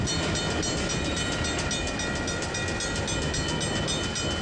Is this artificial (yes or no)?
no